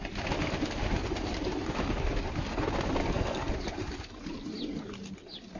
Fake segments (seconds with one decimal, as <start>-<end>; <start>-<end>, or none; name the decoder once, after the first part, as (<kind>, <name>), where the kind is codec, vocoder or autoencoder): 3.0-3.5 (codec, SNAC)